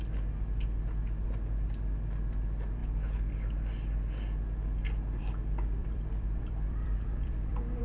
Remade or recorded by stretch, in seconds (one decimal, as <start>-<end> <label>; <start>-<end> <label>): 0.0-5.8 recorded; 5.8-7.8 remade